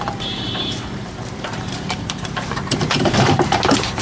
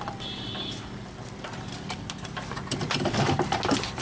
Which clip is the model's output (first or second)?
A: first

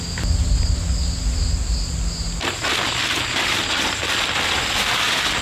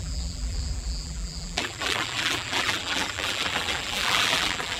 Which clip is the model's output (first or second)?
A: second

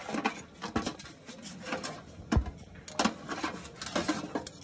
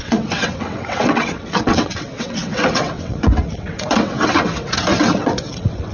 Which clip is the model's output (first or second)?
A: second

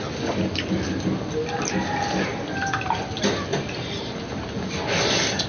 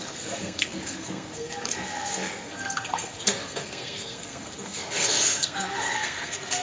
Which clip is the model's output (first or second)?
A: second